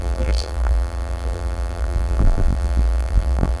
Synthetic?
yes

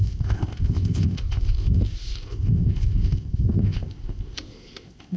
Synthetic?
yes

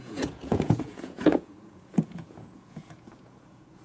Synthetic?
yes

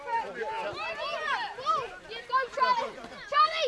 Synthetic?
yes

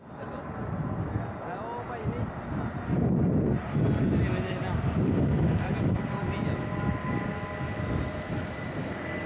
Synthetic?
no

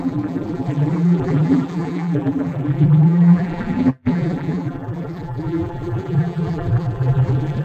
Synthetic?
yes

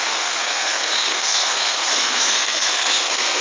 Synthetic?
yes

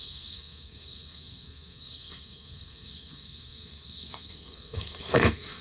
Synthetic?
yes